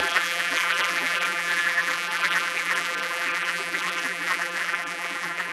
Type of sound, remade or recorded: remade